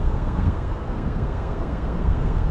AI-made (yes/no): yes